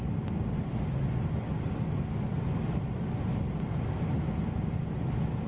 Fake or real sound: real